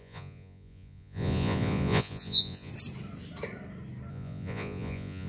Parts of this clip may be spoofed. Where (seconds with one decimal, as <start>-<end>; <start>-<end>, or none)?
0.0-2.7; 4.1-5.3

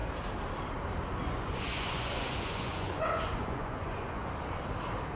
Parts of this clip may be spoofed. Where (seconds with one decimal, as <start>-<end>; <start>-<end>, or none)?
1.2-4.3

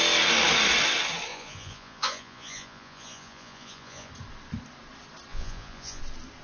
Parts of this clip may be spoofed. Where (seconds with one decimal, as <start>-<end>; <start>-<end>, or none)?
1.3-4.1; 5.3-6.0

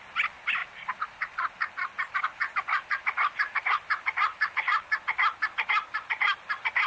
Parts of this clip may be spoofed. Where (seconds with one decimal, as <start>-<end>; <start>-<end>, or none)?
none

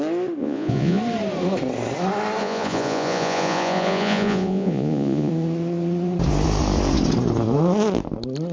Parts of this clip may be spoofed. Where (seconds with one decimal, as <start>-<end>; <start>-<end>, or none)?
0.4-1.0; 2.4-5.3

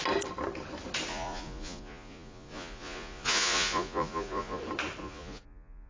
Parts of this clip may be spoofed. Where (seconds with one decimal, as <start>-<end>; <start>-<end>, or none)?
1.1-4.6; 5.0-5.9

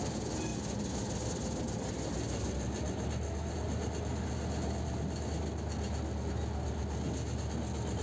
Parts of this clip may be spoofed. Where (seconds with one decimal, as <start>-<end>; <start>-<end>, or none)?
none

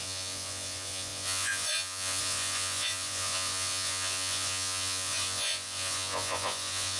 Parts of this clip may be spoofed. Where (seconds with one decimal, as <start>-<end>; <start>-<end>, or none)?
0.0-7.0